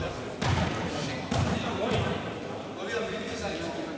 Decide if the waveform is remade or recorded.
recorded